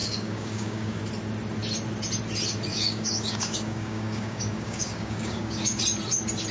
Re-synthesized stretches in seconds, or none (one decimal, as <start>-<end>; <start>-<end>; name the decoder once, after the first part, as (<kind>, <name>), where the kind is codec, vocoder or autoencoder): 0.0-1.0 (codec, DAC); 2.7-5.8